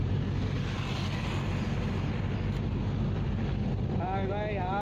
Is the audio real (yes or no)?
yes